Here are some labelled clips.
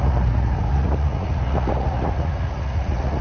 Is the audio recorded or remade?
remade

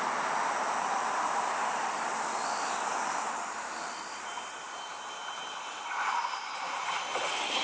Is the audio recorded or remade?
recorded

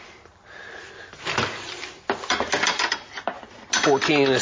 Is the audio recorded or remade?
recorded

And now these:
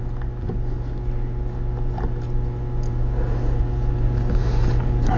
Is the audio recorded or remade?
recorded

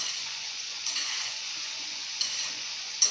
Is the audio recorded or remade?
remade